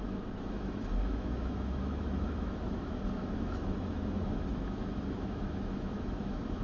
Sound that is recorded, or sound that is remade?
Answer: remade